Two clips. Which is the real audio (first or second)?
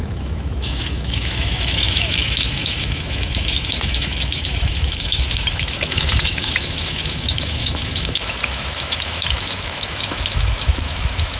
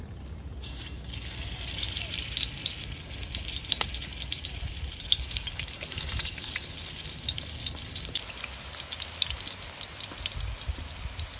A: second